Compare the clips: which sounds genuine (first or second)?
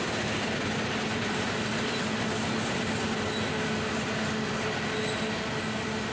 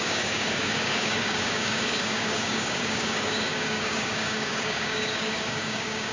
first